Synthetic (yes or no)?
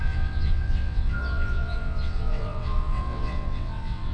yes